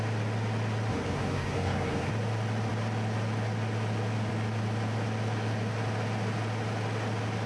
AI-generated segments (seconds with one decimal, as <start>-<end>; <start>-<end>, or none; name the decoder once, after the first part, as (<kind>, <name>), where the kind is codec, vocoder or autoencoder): 0.9-2.1 (codec, SNAC)

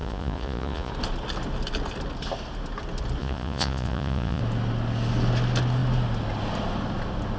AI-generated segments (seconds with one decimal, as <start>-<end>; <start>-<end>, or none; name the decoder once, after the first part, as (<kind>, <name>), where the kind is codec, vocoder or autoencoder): 0.0-0.9 (vocoder, Vocos); 3.2-4.4